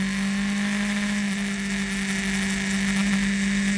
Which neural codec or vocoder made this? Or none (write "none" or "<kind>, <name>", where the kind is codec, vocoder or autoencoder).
none